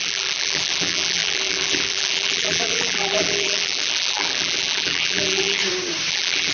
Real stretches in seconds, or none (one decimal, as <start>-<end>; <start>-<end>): 5.6-6.1